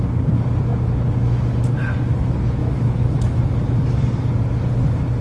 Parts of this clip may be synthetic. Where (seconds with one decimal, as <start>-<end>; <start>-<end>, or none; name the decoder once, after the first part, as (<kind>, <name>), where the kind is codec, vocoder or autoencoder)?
2.6-3.4 (autoencoder, DAC-VAE)

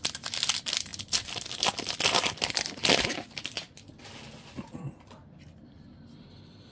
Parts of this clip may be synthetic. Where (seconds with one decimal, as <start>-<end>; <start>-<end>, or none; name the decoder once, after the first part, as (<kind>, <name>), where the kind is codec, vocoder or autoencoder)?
none

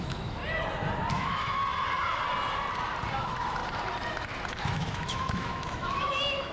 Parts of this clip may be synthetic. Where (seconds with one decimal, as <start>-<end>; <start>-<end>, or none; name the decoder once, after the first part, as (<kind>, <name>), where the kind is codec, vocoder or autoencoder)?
0.0-0.4 (autoencoder, DAC-VAE); 1.1-1.6; 3.2-3.6; 4.6-6.5

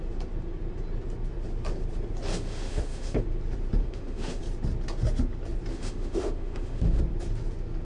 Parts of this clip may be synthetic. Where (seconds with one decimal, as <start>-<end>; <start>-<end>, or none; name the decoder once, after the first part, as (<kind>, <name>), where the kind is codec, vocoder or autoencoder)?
2.3-3.2 (autoencoder, DAC-VAE); 3.8-4.4; 5.7-7.0

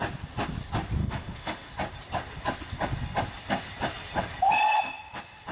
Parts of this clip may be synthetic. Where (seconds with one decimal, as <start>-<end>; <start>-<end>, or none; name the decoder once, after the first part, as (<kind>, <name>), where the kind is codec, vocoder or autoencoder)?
1.0-1.7 (autoencoder, DAC-VAE)

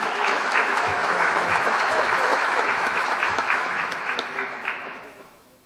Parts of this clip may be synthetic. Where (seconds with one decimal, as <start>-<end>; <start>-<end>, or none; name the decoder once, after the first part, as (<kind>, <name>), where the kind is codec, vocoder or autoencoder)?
0.0-5.7 (autoencoder, DAC-VAE)